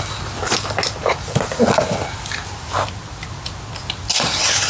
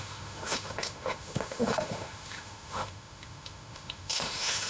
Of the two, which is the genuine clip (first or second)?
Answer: first